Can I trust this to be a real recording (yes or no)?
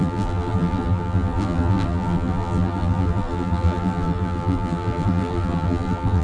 no